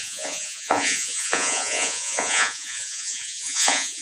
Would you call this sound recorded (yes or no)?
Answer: no